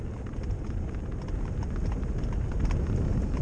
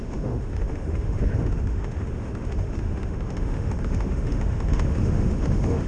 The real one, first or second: first